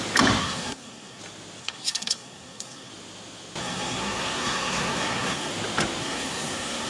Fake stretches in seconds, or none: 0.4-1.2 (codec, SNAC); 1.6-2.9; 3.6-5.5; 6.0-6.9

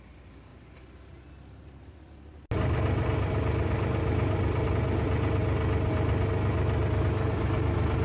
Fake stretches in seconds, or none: none

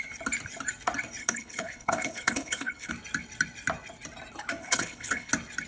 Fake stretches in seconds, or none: 1.2-2.9 (codec, HILCodec); 4.6-5.3

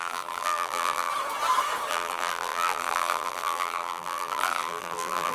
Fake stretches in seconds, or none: 0.0-1.1 (vocoder, BigVGAN v2); 1.9-5.3

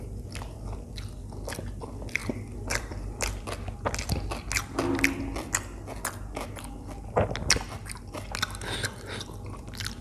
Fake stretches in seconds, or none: 2.2-3.4 (vocoder, BigVGAN v2)

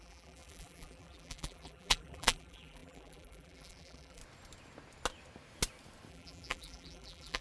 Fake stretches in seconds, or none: 0.0-4.2 (vocoder, BigVGAN v2); 6.1-7.4

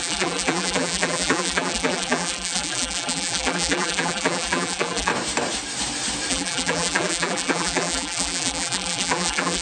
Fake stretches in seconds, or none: 0.0-5.1 (vocoder, BigVGAN v2); 6.3-9.6

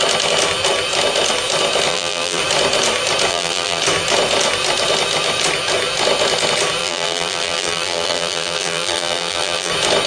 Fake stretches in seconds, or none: 1.9-2.4 (vocoder, BigVGAN v2); 3.3-3.8; 6.8-9.7